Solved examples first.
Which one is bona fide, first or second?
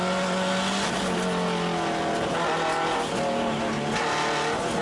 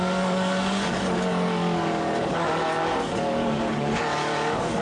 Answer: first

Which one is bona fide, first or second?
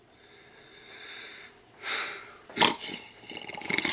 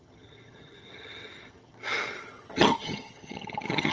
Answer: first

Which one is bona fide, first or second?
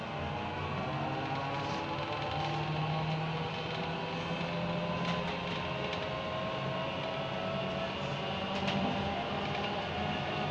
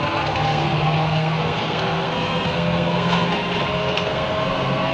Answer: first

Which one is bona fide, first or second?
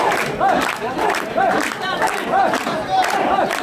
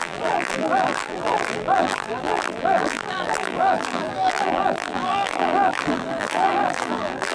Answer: first